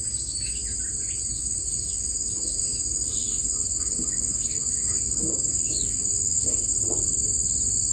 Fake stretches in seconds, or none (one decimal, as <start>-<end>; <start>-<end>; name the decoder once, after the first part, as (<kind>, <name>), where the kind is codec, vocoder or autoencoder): 0.0-0.6 (codec, DAC); 1.3-6.7